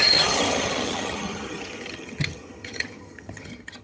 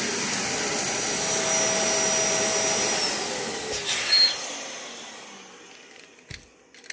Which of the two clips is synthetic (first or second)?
first